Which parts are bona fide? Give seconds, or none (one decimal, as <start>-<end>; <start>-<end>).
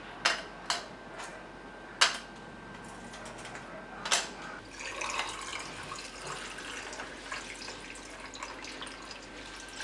0.0-9.8